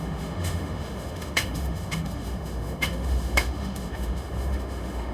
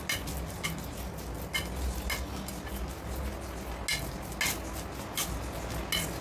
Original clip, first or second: second